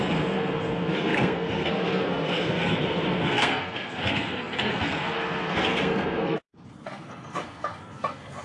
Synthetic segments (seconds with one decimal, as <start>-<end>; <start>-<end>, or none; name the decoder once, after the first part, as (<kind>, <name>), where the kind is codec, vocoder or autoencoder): 0.0-8.4 (codec, SNAC)